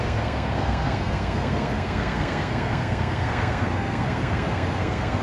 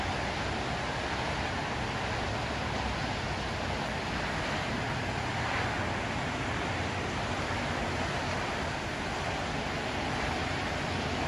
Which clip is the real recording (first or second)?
second